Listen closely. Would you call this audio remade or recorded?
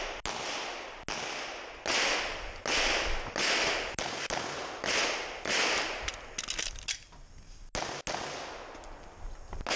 recorded